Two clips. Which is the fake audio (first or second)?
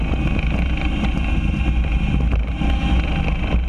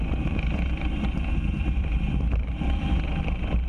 second